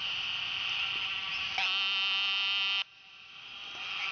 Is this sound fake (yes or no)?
no